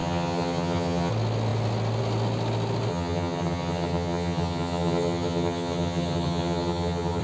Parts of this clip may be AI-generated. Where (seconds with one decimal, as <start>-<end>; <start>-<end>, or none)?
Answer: 0.0-1.1; 2.9-7.2